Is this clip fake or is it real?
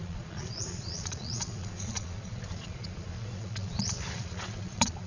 fake